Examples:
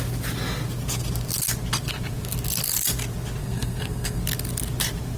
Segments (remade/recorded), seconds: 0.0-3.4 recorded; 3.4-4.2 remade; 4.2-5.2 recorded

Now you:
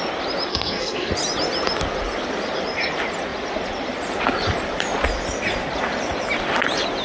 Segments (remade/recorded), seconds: 0.0-0.5 recorded; 0.5-1.1 remade; 1.1-7.0 recorded

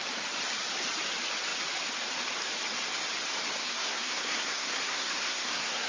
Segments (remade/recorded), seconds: 0.0-3.6 recorded; 3.6-5.9 remade

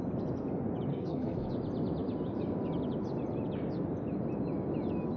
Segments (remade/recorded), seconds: 0.0-0.9 recorded; 0.9-1.5 remade; 1.5-5.2 recorded

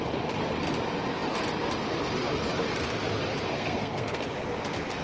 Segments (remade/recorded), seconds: 0.0-3.5 recorded; 3.5-4.2 remade; 4.2-5.0 recorded

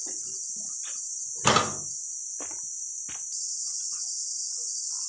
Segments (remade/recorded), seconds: 0.0-5.1 recorded

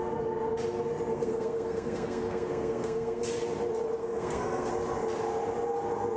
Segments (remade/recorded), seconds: 0.0-1.1 recorded; 1.1-3.2 remade; 3.2-4.0 recorded; 4.0-4.7 remade; 4.7-6.2 recorded

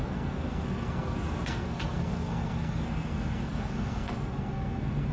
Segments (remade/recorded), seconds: 0.0-5.1 remade